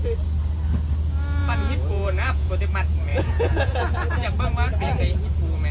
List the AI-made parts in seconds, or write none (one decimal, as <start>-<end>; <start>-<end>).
1.4-2.6; 3.1-4.1

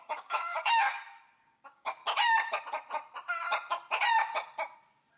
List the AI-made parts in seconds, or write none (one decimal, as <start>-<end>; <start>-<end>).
0.0-2.0